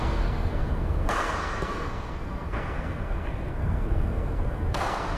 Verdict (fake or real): fake